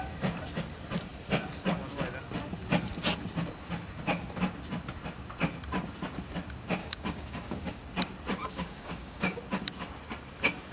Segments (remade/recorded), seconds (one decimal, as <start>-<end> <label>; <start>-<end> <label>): 0.0-6.8 recorded; 6.8-7.8 remade; 7.8-8.4 recorded; 8.4-9.4 remade; 9.4-10.7 recorded